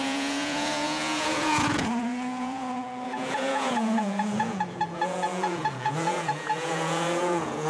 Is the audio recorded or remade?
remade